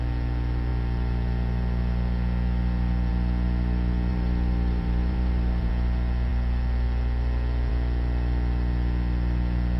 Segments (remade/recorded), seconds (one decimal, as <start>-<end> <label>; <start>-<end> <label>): 0.0-4.1 recorded; 4.1-5.7 remade; 5.7-9.8 recorded